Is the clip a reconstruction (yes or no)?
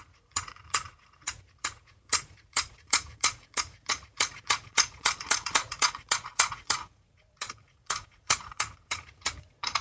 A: yes